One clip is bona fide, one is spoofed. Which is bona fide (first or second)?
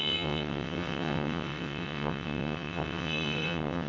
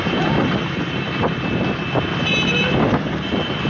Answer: second